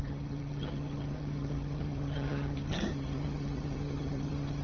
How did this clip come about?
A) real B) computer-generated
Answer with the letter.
B